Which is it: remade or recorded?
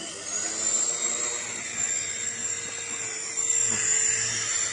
recorded